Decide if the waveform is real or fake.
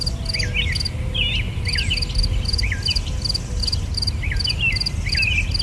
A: real